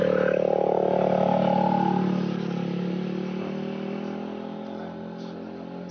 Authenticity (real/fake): real